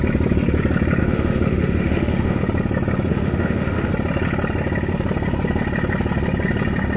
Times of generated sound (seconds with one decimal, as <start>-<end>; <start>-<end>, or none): 1.0-2.4; 3.1-3.9